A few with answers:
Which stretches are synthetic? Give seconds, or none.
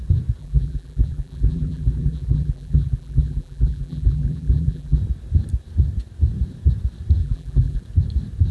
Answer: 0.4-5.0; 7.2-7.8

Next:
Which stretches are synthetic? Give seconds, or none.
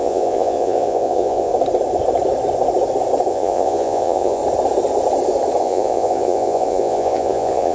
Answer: 0.0-1.5; 3.3-4.4; 5.6-7.7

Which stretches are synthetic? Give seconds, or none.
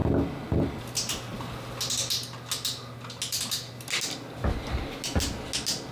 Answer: none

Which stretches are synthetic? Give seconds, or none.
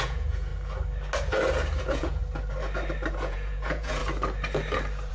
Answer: 0.0-0.5; 1.8-2.2; 3.1-4.0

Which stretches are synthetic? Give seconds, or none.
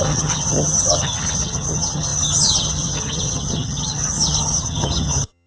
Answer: 0.0-5.5